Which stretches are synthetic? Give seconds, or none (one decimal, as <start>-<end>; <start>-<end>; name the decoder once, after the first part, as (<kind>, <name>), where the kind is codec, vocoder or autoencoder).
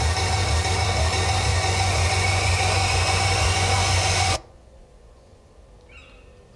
1.5-5.5 (vocoder, Vocos)